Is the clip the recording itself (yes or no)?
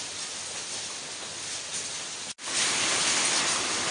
yes